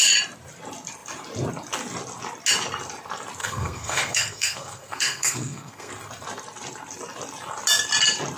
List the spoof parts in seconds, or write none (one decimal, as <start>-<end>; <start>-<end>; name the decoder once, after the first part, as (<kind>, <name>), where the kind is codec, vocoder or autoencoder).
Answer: 3.4-5.9 (codec, SNAC)